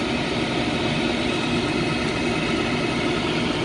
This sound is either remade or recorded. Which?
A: recorded